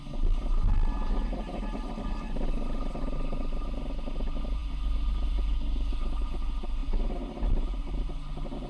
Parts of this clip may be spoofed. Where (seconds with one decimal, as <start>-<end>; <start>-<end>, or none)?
none